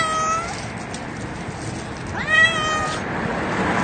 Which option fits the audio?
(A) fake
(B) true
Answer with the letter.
B